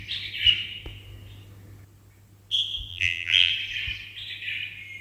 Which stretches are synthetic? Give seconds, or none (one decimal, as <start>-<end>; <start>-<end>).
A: 2.9-3.5